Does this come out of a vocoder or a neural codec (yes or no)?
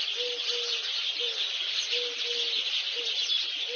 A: no